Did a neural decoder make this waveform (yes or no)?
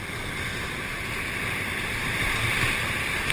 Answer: yes